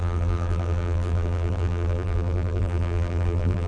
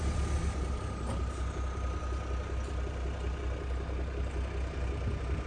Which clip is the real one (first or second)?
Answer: second